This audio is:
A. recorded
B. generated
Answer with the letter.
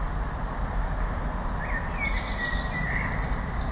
A